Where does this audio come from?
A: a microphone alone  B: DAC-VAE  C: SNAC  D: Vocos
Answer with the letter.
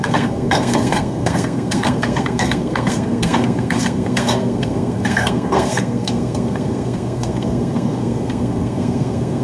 C